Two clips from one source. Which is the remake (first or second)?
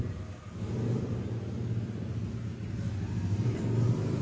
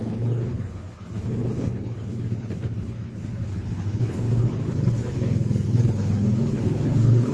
second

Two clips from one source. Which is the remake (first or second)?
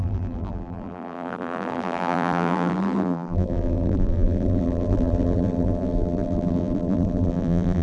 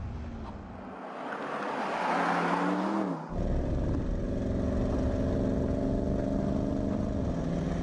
first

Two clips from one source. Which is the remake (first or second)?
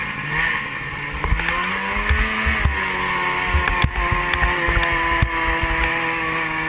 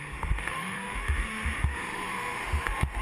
second